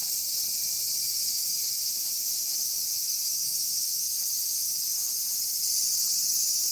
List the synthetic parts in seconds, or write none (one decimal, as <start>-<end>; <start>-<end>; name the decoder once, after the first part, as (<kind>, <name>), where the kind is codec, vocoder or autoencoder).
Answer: 1.1-5.1 (autoencoder, DAC-VAE)